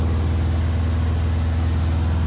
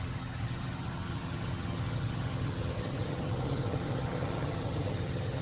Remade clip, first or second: second